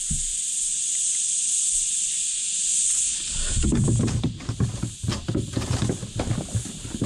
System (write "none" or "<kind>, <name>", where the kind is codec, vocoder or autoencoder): none